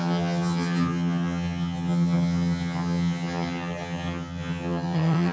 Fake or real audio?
fake